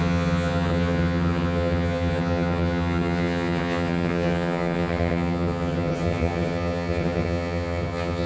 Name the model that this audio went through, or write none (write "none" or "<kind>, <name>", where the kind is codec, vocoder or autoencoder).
vocoder, HiFi-GAN